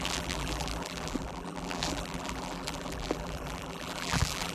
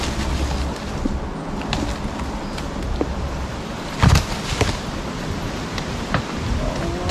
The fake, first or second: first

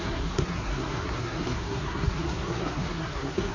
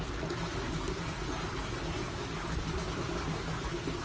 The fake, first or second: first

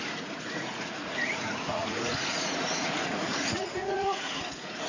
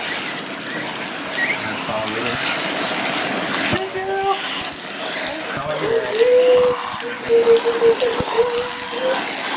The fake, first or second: first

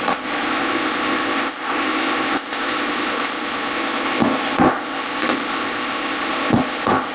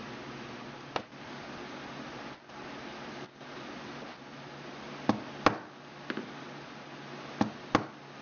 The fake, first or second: first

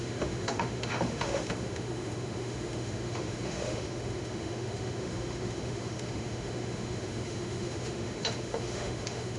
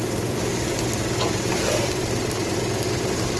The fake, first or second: first